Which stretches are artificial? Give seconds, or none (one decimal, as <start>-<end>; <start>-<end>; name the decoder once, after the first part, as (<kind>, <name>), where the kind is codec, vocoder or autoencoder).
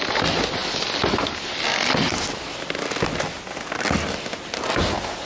none